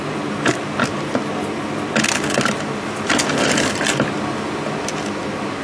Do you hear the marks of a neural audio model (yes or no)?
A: no